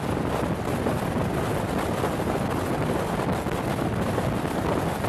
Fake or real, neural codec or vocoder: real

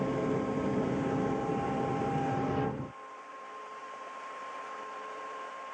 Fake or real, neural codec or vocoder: fake, vocoder, BigVGAN v2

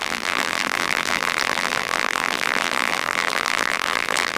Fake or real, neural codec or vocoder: fake, vocoder, BigVGAN v2